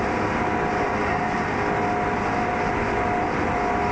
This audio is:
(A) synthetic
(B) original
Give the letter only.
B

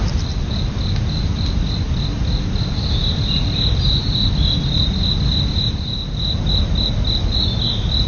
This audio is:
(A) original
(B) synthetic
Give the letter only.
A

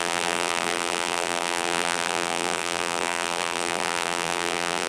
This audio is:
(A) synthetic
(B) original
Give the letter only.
A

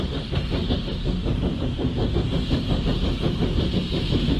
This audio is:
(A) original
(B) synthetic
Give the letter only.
A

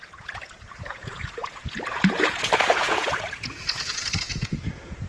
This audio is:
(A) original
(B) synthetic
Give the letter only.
B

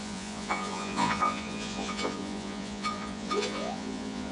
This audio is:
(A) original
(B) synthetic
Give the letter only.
B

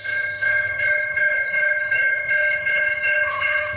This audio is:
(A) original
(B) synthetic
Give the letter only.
B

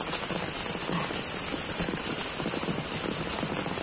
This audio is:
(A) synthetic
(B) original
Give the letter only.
B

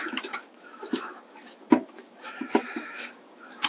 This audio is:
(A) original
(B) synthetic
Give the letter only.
B